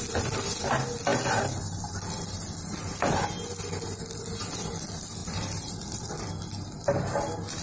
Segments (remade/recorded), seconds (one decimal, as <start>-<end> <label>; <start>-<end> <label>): 0.0-5.2 recorded; 5.2-6.2 remade; 6.2-7.6 recorded